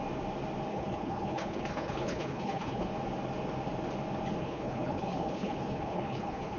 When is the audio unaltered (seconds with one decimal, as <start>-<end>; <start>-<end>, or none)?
0.0-0.7; 2.9-4.4